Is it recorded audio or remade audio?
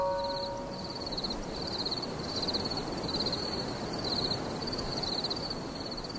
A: recorded